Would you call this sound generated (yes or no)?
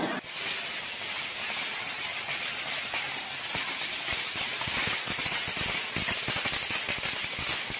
no